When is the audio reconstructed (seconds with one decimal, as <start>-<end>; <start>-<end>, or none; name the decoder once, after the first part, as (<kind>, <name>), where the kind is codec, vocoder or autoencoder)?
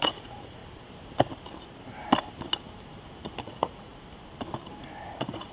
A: 0.0-0.6 (vocoder, Vocos); 3.4-3.9; 5.1-5.5